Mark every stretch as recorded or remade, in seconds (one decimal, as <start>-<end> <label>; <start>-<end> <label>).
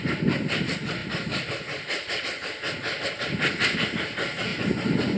0.0-5.2 recorded